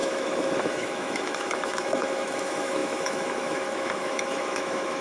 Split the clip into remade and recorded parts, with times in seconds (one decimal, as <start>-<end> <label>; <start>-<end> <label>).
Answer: 0.0-5.0 remade